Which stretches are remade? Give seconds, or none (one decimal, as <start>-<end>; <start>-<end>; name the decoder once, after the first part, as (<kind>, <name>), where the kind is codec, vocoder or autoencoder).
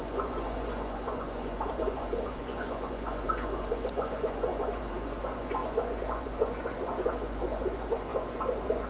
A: 0.0-8.9 (vocoder, Vocos)